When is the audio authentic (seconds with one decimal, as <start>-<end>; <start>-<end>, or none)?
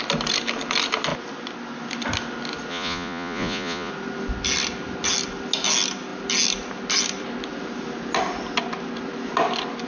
0.0-2.7; 3.9-9.9